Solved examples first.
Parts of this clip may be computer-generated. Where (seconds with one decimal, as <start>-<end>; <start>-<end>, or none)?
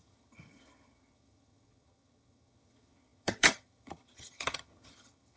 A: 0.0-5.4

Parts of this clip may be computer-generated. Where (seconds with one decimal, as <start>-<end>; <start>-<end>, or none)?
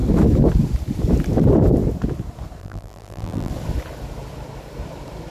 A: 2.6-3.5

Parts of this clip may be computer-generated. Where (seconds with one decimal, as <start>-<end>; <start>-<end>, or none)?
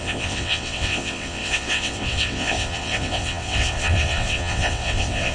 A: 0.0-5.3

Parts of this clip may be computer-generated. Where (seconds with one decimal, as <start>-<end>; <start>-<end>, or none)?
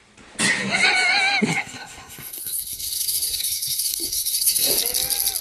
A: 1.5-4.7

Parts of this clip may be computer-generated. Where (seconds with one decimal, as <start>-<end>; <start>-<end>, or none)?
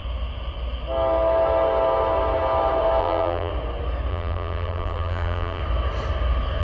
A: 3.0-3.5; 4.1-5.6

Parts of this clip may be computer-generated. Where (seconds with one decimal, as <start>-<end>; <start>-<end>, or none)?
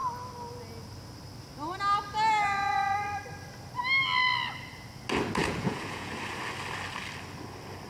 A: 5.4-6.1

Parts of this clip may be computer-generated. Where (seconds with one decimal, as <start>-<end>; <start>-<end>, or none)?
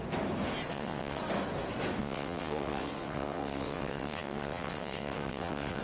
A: 0.7-1.2; 2.0-5.8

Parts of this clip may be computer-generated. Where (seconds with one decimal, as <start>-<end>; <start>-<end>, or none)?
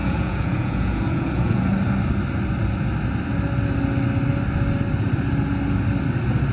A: 0.0-1.7